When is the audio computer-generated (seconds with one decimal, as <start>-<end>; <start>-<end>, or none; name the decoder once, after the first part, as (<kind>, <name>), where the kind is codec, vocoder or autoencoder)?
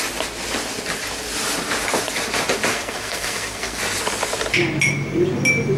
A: 2.7-3.8 (codec, SNAC)